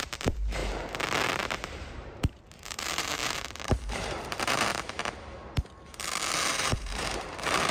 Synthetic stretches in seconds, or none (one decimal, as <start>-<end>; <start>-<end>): 0.0-0.6; 1.9-4.7; 6.5-7.7